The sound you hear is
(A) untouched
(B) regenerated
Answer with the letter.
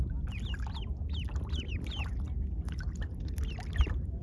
A